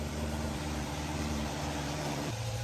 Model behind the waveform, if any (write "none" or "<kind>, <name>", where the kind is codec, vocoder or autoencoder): vocoder, BigVGAN v2